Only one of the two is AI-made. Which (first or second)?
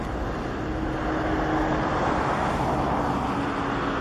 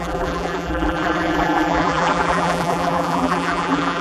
second